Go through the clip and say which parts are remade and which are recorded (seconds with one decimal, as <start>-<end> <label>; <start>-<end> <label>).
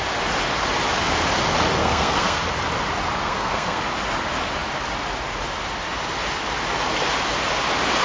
0.0-1.8 recorded; 1.8-2.4 remade; 2.4-3.2 recorded; 3.2-3.8 remade; 3.8-8.0 recorded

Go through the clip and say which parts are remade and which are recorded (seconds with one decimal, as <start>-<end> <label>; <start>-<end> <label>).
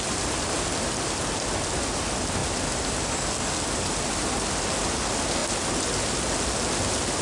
0.0-7.2 recorded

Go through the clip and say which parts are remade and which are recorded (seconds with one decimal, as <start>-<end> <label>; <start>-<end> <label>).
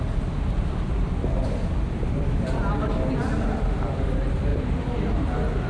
0.0-5.7 recorded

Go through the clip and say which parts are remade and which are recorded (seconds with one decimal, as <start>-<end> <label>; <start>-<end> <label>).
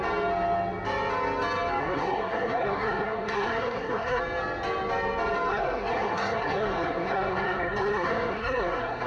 0.0-1.8 recorded; 1.8-4.2 remade; 4.2-5.5 recorded; 5.5-9.1 remade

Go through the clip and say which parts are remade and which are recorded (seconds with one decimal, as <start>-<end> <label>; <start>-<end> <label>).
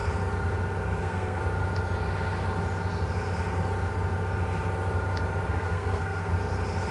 0.0-1.0 recorded; 1.0-1.4 remade; 1.4-5.5 recorded; 5.5-6.3 remade; 6.3-6.9 recorded